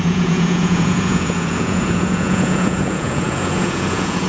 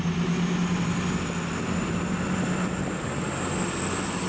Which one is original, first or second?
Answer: second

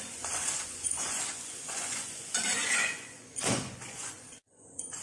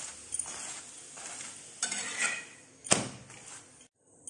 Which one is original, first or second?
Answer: second